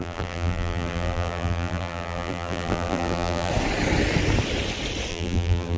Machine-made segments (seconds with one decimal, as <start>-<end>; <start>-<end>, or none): 0.0-3.5; 5.1-5.8